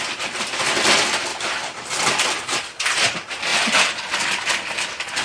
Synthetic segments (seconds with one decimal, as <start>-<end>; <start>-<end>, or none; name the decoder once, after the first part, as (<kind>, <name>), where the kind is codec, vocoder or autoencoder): 3.5-4.3 (vocoder, BigVGAN v2)